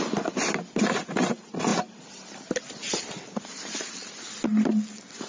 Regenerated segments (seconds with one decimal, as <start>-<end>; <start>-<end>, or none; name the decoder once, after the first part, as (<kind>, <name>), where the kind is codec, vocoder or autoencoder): none